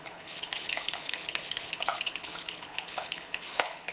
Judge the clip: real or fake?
fake